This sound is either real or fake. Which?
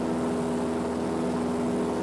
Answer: real